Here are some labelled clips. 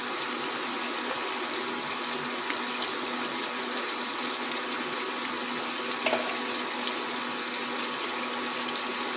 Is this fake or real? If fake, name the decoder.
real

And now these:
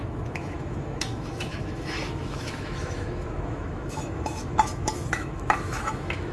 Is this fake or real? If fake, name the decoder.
fake, autoencoder, DAC-VAE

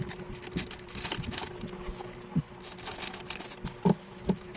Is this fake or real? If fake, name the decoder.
real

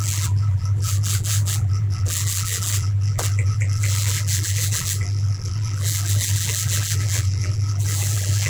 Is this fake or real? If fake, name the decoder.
fake, vocoder, BigVGAN v2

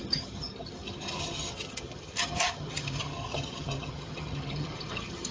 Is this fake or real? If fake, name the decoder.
fake, vocoder, HiFi-GAN